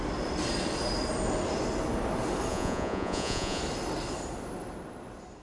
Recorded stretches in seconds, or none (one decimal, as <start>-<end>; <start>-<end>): 0.0-2.5; 3.6-5.4